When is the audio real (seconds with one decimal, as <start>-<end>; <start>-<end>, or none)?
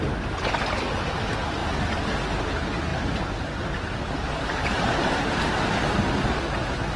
0.0-2.9; 5.8-7.0